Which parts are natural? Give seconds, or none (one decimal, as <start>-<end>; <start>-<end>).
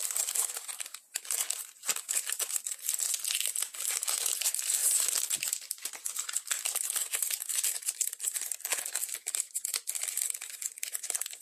0.0-11.4